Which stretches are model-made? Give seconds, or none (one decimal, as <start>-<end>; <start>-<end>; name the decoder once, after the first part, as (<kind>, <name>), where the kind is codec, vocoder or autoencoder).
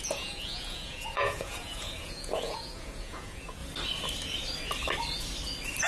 0.0-3.6 (vocoder, Vocos)